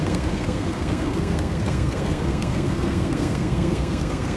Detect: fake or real fake